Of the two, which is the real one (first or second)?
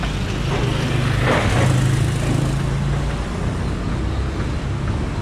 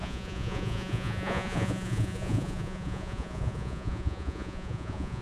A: first